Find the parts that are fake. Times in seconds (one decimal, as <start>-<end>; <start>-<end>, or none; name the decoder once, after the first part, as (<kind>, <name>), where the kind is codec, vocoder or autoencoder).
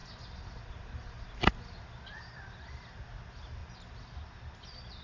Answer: none